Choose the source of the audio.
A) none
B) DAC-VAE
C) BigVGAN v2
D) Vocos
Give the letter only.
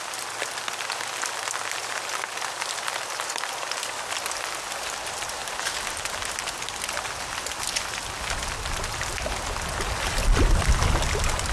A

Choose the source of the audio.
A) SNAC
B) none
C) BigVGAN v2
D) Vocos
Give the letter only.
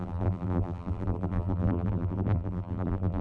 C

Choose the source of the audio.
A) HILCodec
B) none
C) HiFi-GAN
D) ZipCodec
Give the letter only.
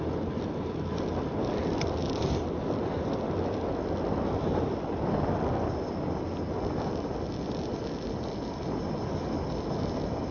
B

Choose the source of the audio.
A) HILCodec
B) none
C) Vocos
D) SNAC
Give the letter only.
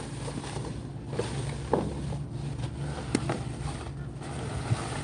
B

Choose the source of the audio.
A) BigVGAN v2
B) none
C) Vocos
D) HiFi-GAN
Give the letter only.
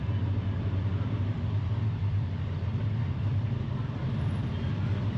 A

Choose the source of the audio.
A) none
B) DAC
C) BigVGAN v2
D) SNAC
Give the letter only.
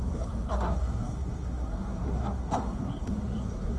D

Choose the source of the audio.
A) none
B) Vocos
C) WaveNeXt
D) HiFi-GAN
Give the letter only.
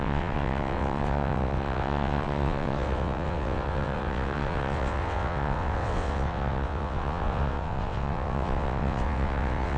C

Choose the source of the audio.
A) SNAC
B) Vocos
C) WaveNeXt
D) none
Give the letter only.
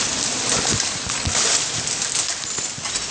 D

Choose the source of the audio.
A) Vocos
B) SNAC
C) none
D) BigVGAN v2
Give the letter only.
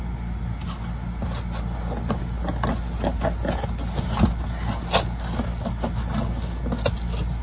C